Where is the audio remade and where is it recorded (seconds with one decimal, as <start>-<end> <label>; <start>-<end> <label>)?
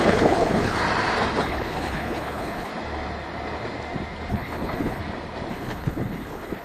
0.0-0.8 remade; 0.8-1.4 recorded; 1.4-2.7 remade; 2.7-4.3 recorded; 4.3-5.0 remade; 5.0-5.5 recorded; 5.5-6.6 remade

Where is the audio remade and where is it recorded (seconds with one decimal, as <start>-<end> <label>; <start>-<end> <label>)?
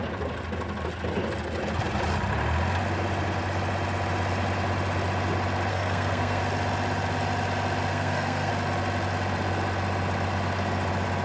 0.0-5.7 recorded; 5.7-6.4 remade; 6.4-7.9 recorded; 7.9-8.5 remade; 8.5-11.2 recorded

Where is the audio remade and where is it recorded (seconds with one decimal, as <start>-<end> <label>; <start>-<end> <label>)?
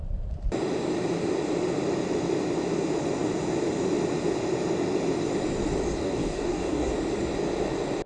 0.0-6.0 recorded; 6.0-6.9 remade; 6.9-8.1 recorded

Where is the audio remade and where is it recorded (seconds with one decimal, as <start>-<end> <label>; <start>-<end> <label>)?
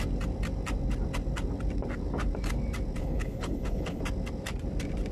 0.0-3.0 recorded; 3.0-4.0 remade; 4.0-5.1 recorded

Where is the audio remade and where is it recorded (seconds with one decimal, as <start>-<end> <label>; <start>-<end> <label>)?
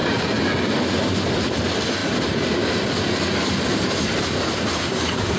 0.0-2.0 recorded; 2.0-5.4 remade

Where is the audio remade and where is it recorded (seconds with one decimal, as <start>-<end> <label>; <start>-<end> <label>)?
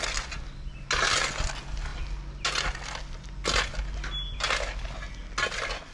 0.0-5.9 recorded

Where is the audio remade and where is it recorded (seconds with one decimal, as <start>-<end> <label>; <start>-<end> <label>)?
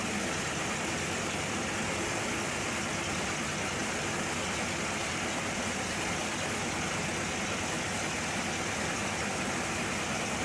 0.0-10.4 recorded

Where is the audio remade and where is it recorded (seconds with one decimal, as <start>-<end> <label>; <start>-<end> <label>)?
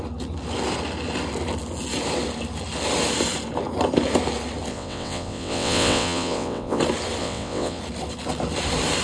0.0-4.7 recorded; 4.7-6.8 remade; 6.8-7.2 recorded; 7.2-7.8 remade; 7.8-9.0 recorded